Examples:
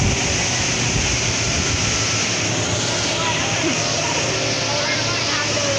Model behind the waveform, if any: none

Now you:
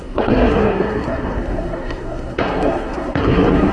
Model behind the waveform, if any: codec, SNAC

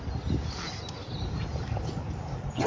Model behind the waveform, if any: none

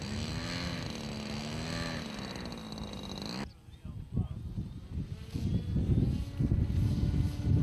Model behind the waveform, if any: none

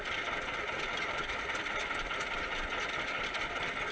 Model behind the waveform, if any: none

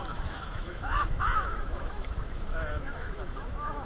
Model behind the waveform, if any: autoencoder, DAC-VAE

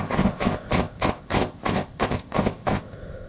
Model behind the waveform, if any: codec, ZipCodec